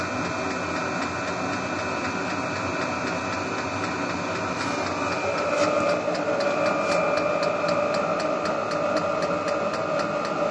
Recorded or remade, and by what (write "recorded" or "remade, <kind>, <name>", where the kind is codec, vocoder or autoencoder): recorded